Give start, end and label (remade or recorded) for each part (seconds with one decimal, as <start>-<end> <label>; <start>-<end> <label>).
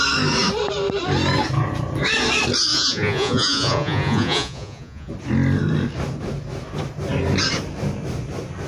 0.0-2.7 recorded; 2.7-5.1 remade; 5.1-8.7 recorded